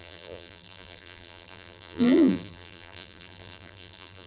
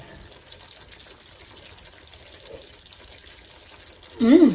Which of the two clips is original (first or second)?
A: second